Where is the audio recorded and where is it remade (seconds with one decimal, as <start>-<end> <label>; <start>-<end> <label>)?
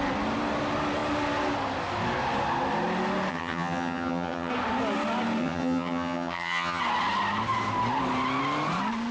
0.0-3.3 recorded; 3.3-4.5 remade; 4.5-5.4 recorded; 5.4-6.8 remade; 6.8-9.1 recorded